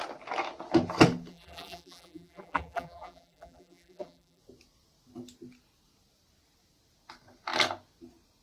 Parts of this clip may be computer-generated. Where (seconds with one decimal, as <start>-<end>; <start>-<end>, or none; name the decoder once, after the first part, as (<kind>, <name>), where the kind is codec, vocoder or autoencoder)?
1.3-4.4 (vocoder, BigVGAN v2)